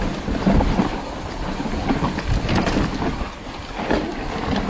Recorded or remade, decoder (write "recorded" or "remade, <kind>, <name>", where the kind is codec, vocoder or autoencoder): recorded